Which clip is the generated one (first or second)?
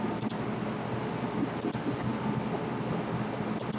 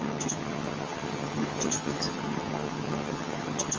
second